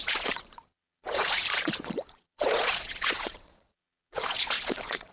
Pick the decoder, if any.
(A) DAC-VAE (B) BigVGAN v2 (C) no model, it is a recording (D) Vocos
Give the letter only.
D